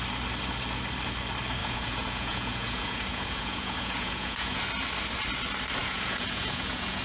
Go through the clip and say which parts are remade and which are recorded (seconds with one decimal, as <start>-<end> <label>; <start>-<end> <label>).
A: 0.0-1.6 recorded; 1.6-4.6 remade; 4.6-5.8 recorded; 5.8-7.0 remade